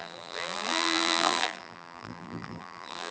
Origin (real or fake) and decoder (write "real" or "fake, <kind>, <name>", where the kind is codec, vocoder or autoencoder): fake, vocoder, BigVGAN v2